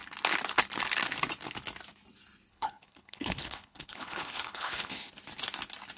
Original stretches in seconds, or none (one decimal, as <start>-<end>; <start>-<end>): 0.0-2.5; 5.1-6.0